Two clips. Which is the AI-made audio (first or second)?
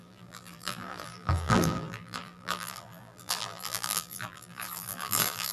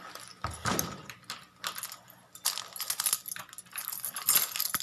first